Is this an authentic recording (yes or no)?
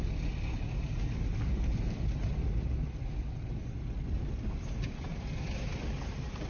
yes